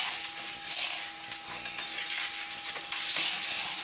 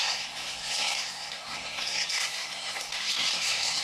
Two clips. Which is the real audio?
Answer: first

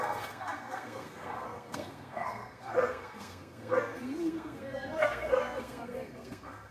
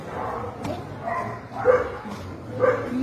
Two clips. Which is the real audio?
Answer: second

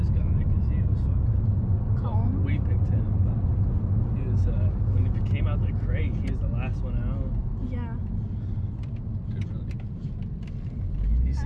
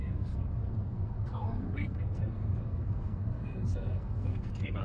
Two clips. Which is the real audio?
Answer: first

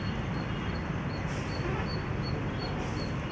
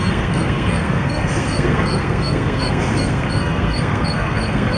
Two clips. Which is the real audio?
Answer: first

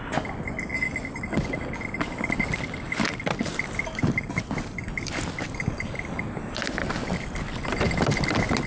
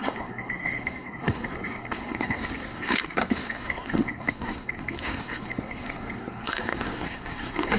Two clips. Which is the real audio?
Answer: first